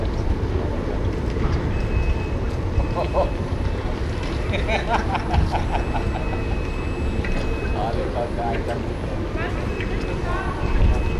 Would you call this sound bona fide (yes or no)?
yes